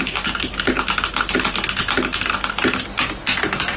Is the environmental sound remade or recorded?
recorded